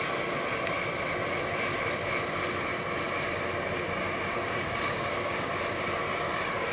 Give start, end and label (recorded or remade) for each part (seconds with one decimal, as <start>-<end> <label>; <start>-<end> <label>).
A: 0.0-4.4 recorded; 4.4-5.5 remade; 5.5-6.7 recorded